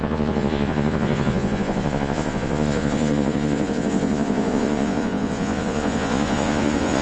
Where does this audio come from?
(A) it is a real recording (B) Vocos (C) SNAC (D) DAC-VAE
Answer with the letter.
B